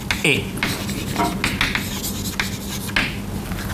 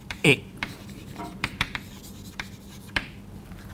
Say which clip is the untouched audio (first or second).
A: first